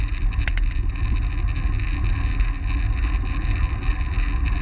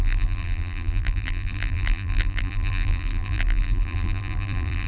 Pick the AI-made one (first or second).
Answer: second